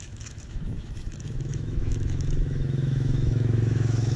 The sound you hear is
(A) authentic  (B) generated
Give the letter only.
B